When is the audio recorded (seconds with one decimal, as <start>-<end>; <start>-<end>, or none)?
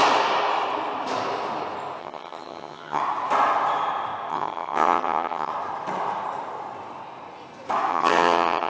0.0-2.0; 3.0-4.3; 5.5-7.9